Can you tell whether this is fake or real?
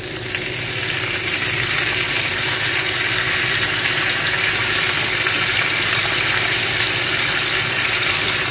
fake